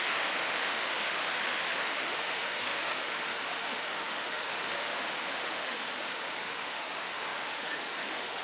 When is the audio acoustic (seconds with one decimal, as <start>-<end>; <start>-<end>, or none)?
none